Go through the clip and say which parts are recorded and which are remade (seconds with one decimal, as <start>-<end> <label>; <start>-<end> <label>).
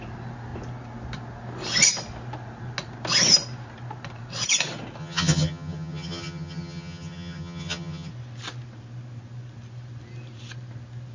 0.0-5.0 recorded; 5.0-8.1 remade; 8.1-11.1 recorded